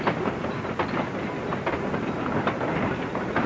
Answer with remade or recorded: recorded